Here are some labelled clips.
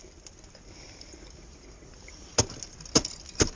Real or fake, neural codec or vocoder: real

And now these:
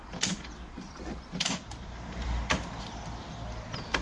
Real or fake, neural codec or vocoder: fake, vocoder, BigVGAN v2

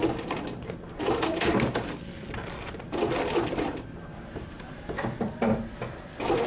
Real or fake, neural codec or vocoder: fake, vocoder, BigVGAN v2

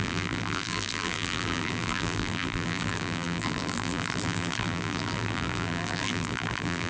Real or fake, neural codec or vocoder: fake, vocoder, BigVGAN v2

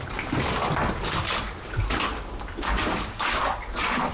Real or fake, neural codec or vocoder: real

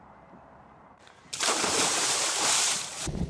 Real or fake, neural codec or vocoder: fake, vocoder, BigVGAN v2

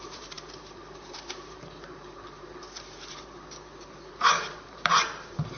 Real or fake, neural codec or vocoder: fake, vocoder, BigVGAN v2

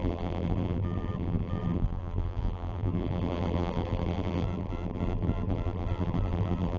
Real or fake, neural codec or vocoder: fake, vocoder, BigVGAN v2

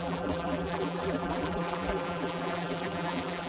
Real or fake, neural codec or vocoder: fake, vocoder, BigVGAN v2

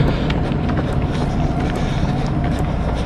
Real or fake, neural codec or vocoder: real